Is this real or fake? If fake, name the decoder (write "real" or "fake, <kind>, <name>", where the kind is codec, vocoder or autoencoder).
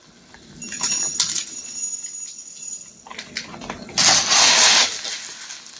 real